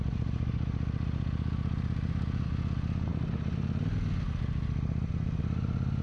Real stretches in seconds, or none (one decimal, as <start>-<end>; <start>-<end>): 0.0-6.0